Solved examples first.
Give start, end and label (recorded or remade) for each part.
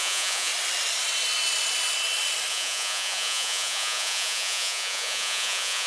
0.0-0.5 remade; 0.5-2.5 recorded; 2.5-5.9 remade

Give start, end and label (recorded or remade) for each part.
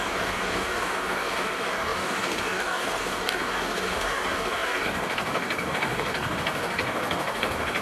0.0-7.8 remade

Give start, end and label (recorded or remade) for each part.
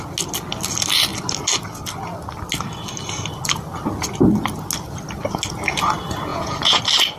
0.0-6.3 recorded; 6.3-6.8 remade; 6.8-7.2 recorded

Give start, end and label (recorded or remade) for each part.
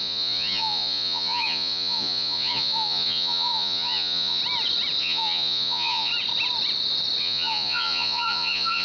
0.0-4.4 remade; 4.4-5.0 recorded; 5.0-6.1 remade; 6.1-7.2 recorded; 7.2-8.8 remade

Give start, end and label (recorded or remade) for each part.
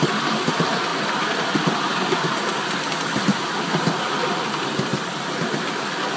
0.0-6.2 recorded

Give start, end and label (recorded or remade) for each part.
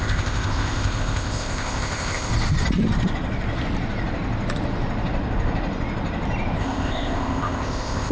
0.0-2.3 remade; 2.3-6.6 recorded; 6.6-8.1 remade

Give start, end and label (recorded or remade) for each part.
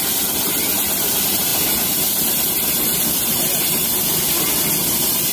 0.0-5.3 recorded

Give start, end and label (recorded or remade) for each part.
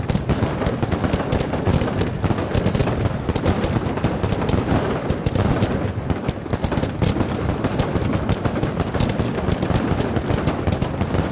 0.0-11.3 recorded